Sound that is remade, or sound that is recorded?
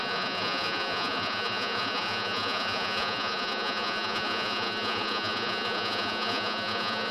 remade